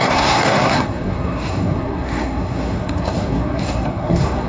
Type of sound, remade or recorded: remade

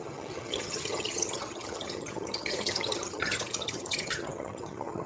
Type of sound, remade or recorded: remade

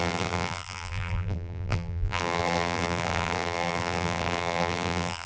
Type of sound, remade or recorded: remade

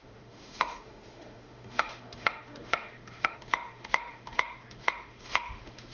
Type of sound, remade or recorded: remade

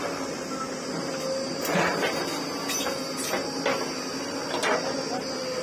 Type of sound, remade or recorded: recorded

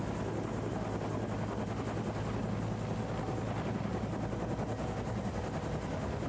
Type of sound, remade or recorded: recorded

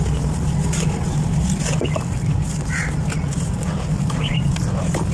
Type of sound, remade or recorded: recorded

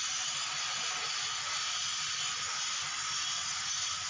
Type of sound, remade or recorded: recorded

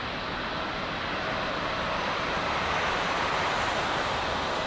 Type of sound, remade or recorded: recorded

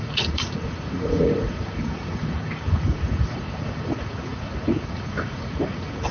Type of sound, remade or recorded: remade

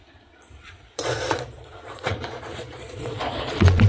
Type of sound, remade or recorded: remade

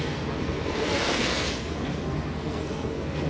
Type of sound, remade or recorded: remade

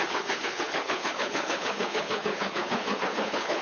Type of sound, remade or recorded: remade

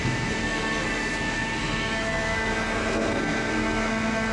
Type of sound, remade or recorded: remade